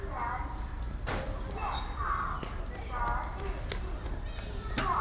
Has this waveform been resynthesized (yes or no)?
no